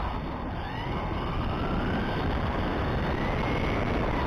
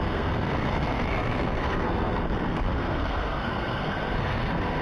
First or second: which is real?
first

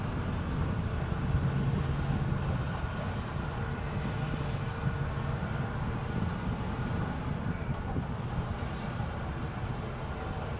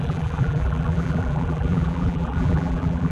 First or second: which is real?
first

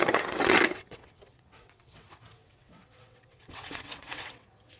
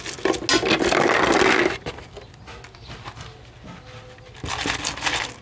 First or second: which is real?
second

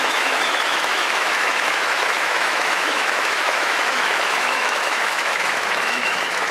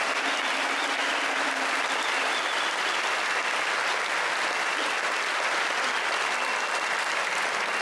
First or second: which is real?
second